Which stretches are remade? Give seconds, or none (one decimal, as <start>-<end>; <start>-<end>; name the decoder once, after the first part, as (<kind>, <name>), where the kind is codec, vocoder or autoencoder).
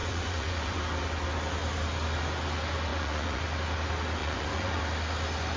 0.0-0.8 (vocoder, Vocos); 2.9-3.4; 4.2-4.8